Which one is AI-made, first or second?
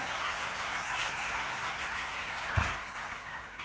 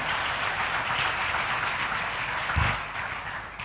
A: first